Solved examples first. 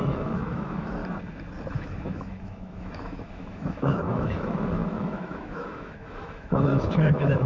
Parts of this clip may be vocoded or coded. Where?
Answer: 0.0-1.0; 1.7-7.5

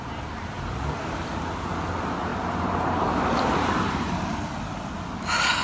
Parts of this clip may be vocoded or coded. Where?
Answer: 2.3-4.4

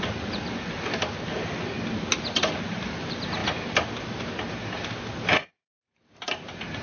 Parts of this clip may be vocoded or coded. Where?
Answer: 0.0-1.4; 2.6-3.4; 5.5-6.8

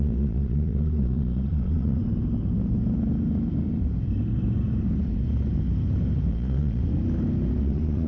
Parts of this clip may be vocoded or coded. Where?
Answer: 0.0-2.0; 6.3-6.8; 7.6-8.1

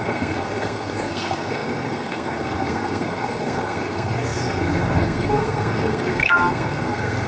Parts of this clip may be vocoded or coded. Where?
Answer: 0.0-7.3

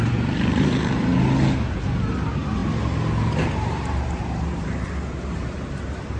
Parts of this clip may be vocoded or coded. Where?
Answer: 0.0-1.1; 2.1-6.2

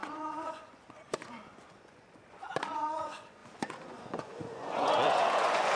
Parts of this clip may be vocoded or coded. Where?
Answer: 0.0-5.8